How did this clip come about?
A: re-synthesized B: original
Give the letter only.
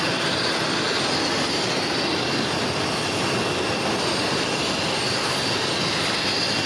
B